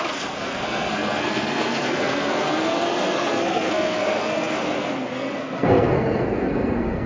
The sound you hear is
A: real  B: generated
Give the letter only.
B